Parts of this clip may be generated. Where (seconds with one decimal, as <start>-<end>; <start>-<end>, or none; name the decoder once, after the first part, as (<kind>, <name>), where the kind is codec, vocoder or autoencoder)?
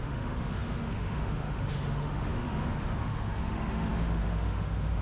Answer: 0.0-5.0 (autoencoder, DAC-VAE)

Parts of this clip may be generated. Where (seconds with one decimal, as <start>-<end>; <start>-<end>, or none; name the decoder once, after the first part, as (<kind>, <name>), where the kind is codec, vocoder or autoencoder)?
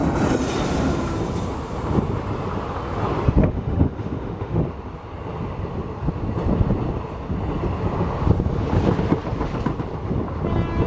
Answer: 3.4-4.6 (autoencoder, DAC-VAE)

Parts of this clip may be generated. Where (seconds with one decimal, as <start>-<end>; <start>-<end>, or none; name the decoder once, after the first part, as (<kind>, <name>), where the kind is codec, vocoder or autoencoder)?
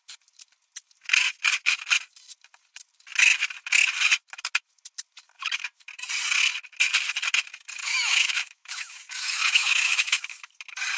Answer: 7.8-10.5 (autoencoder, DAC-VAE)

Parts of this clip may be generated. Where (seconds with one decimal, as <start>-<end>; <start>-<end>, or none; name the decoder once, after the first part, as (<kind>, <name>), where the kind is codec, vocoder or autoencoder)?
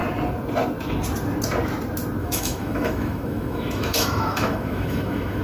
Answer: 2.2-5.4 (autoencoder, DAC-VAE)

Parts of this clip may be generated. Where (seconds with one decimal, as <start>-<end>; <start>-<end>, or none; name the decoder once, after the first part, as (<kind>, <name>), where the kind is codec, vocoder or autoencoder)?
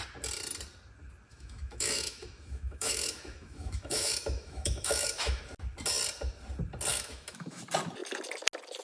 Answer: 1.3-5.4 (autoencoder, DAC-VAE); 6.9-7.6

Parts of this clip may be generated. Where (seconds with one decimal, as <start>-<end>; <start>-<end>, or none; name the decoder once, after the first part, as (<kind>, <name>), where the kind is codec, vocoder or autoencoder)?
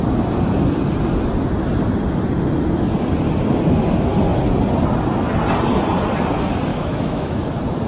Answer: 6.7-7.4 (autoencoder, DAC-VAE)